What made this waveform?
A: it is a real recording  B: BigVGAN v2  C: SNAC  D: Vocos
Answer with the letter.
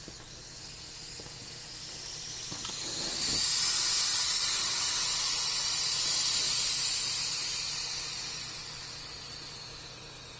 A